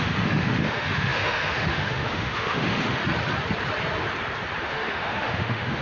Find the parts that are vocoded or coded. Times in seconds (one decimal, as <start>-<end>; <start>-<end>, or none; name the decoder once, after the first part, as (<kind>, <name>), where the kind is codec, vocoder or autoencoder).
0.0-3.0 (autoencoder, DAC-VAE); 4.6-5.8